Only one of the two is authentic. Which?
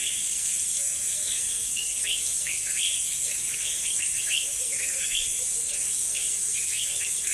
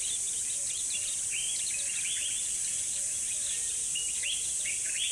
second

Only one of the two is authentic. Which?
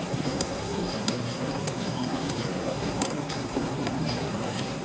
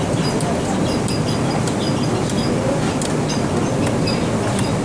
second